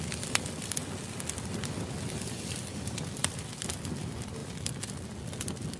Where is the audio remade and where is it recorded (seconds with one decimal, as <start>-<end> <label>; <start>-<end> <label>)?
0.0-0.8 remade; 0.8-2.1 recorded; 2.1-4.4 remade; 4.4-5.2 recorded; 5.2-5.8 remade